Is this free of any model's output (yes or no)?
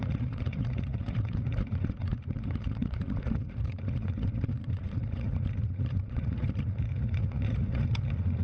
no